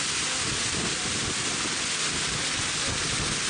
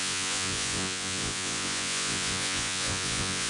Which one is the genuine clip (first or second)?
first